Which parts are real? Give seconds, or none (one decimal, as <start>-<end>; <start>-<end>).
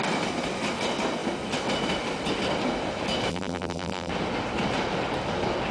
0.0-3.3; 4.1-5.7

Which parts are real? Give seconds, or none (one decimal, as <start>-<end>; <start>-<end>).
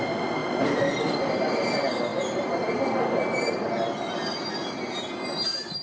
0.0-0.4; 1.0-5.8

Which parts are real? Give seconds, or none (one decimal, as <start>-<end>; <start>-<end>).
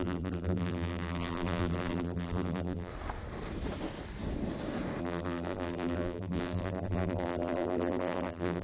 2.9-5.0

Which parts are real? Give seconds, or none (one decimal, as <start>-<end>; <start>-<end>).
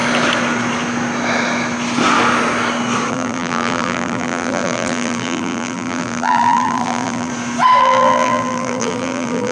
0.0-3.1; 7.3-7.8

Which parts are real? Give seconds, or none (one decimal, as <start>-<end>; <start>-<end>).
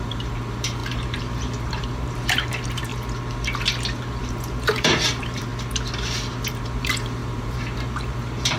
2.9-4.2; 5.5-6.5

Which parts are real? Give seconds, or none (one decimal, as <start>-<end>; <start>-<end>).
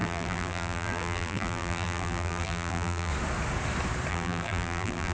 3.1-4.1